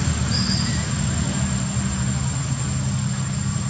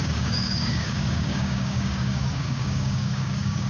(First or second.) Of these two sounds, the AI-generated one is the second